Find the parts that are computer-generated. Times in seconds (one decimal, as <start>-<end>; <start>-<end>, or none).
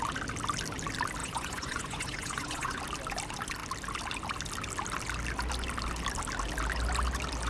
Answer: 1.2-2.8